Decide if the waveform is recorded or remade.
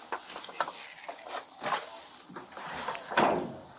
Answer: recorded